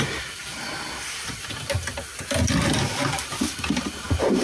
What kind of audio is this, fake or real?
real